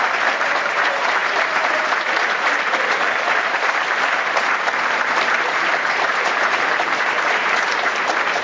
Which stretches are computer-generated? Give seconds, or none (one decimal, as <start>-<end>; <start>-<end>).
0.0-8.4